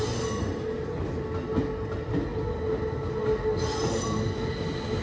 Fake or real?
real